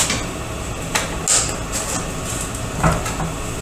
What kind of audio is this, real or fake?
real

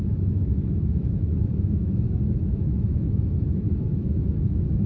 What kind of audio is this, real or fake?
fake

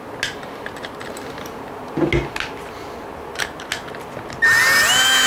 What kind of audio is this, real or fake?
real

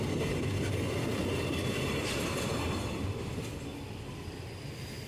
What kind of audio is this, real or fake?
real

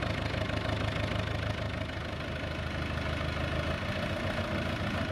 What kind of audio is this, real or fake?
real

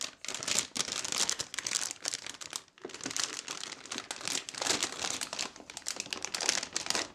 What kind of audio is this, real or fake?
real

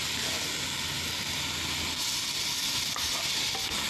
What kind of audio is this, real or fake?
real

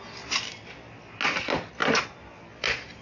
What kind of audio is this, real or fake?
real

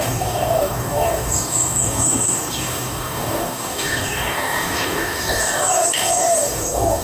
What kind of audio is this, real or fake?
fake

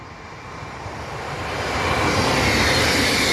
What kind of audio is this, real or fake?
real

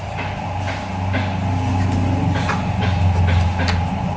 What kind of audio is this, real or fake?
real